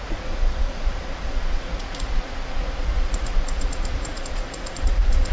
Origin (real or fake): fake